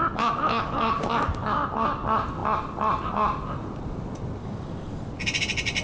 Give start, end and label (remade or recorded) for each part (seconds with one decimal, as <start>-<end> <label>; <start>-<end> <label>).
0.0-0.5 recorded; 0.5-1.0 remade; 1.0-4.4 recorded; 4.4-5.1 remade; 5.1-5.8 recorded